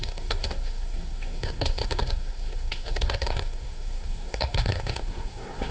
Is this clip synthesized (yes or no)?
yes